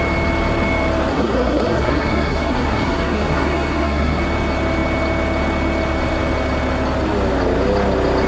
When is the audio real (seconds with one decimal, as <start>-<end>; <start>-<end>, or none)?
0.0-1.1; 4.2-8.3